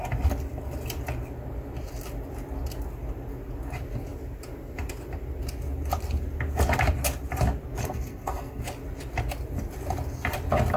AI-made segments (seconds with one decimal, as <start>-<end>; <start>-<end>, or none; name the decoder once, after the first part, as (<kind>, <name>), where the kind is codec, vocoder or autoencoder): 7.8-8.6 (codec, SNAC)